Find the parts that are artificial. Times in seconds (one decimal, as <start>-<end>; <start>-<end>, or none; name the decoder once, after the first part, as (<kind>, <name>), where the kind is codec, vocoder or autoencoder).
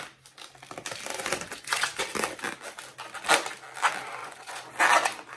1.1-2.0 (vocoder, Vocos); 4.2-4.7